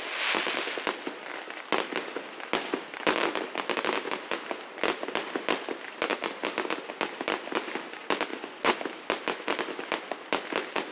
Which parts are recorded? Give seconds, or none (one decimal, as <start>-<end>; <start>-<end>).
0.0-8.3; 8.8-10.9